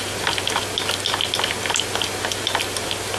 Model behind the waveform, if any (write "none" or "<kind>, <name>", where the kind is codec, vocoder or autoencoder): none